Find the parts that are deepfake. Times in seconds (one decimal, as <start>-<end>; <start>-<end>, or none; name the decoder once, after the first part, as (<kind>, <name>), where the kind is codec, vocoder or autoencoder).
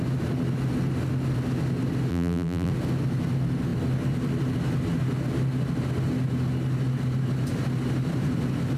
2.1-2.7 (vocoder, BigVGAN v2)